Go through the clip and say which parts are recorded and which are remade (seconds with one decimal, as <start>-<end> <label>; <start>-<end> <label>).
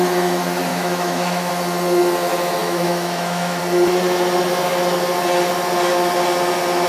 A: 0.0-0.7 recorded; 0.7-1.5 remade; 1.5-2.6 recorded; 2.6-3.6 remade; 3.6-6.9 recorded